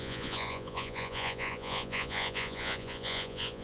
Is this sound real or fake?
fake